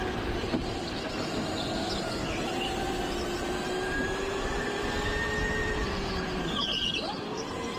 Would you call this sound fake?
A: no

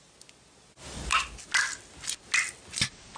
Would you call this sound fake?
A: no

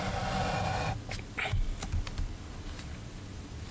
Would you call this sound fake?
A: no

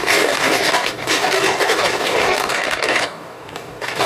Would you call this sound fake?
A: yes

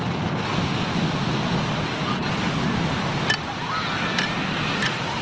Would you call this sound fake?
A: no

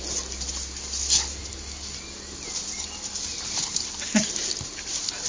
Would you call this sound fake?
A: no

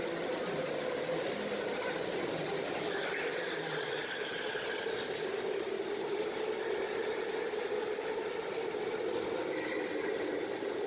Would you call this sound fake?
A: no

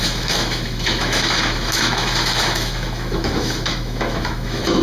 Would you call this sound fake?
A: yes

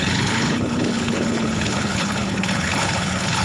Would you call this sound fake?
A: yes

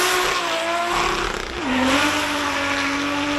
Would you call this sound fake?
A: no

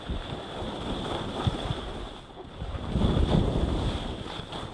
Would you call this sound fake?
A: no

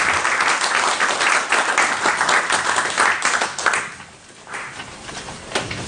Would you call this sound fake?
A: no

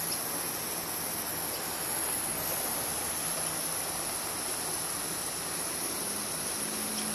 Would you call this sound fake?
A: no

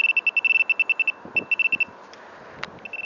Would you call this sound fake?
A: no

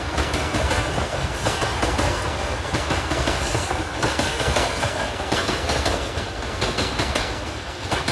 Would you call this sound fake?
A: yes